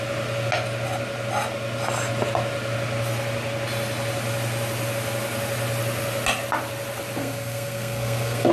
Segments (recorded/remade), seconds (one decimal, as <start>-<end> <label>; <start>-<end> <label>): 0.0-7.2 recorded; 7.2-8.5 remade